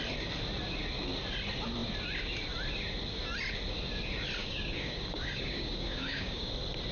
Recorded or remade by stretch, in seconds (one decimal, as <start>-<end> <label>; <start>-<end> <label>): 0.0-4.4 recorded; 4.4-6.5 remade; 6.5-6.9 recorded

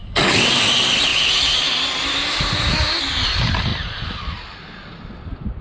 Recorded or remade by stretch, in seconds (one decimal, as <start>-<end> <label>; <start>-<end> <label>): 0.0-0.6 remade; 0.6-5.6 recorded

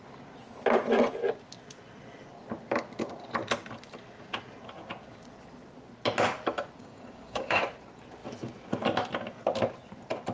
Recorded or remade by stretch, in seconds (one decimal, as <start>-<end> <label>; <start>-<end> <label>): 0.0-6.8 recorded; 6.8-7.6 remade; 7.6-10.3 recorded

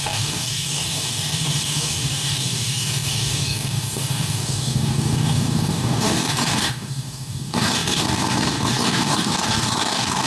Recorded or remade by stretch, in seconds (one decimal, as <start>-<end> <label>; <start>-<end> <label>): 0.0-10.3 remade

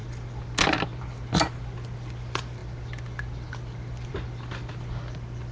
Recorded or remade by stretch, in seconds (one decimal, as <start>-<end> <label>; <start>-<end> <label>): 0.0-5.5 recorded